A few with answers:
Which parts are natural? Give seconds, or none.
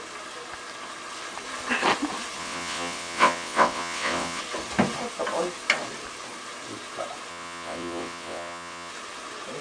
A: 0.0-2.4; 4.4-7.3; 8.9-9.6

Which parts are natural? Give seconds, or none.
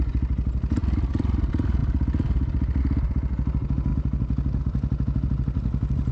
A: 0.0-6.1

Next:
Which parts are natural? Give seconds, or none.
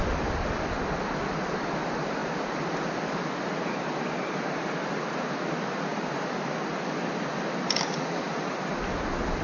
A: 0.0-9.4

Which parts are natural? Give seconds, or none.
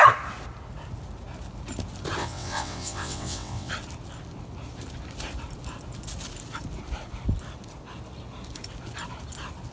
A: 0.0-2.2; 3.7-9.7